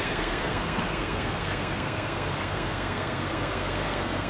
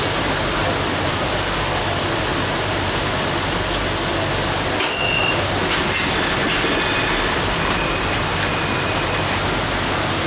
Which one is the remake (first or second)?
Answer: first